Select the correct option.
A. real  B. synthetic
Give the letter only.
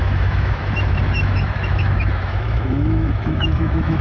B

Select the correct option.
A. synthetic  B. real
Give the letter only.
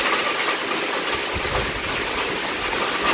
B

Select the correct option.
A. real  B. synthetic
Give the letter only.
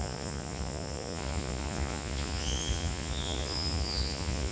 B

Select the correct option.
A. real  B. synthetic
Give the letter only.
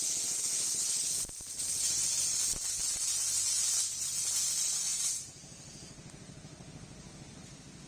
A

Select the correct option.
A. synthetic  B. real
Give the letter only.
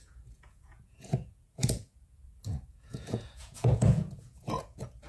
A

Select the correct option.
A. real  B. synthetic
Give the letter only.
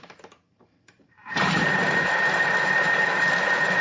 B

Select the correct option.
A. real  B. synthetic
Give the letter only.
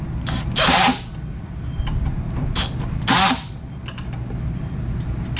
A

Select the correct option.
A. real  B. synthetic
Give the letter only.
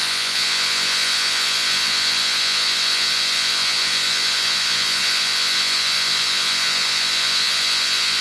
B